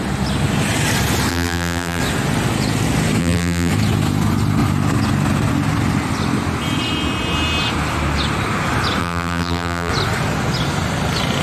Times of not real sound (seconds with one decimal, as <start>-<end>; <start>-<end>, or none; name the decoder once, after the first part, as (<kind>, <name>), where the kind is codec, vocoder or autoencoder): 1.3-2.0 (vocoder, BigVGAN v2); 3.2-3.7; 9.0-9.9